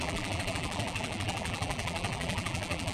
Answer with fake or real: fake